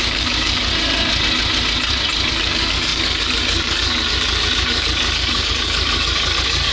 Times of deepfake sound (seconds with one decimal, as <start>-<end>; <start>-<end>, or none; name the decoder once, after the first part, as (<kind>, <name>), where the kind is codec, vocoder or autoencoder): 0.0-0.7 (codec, DAC); 2.3-6.7